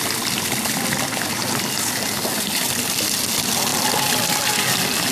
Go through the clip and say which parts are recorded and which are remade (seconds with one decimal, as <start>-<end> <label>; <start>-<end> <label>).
0.0-5.1 recorded